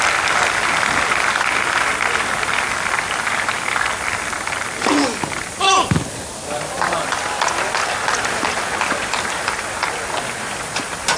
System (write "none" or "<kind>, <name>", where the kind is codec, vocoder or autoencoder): none